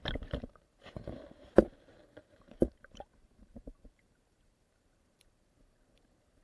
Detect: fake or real fake